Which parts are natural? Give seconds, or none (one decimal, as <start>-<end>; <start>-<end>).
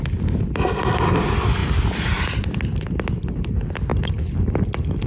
0.0-5.1